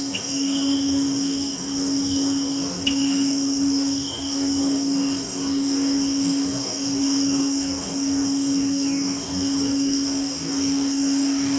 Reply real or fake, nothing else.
fake